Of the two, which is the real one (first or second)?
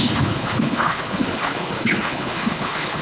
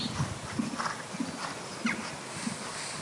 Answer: second